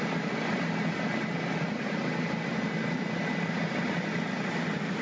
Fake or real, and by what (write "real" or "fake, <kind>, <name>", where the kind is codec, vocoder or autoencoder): real